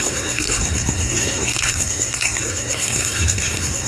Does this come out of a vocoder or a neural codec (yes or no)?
yes